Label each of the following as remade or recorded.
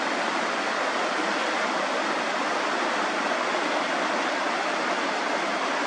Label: recorded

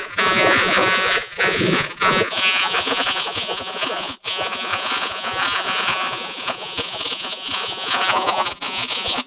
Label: remade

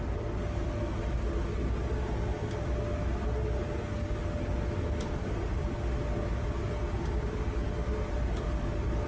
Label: recorded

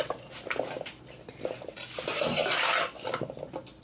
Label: recorded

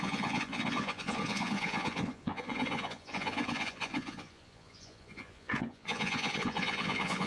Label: remade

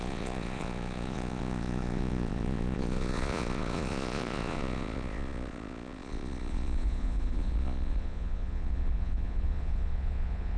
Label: remade